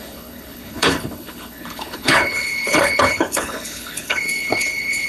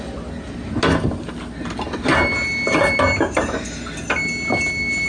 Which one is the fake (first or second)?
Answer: first